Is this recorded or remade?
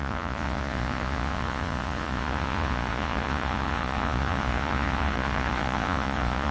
remade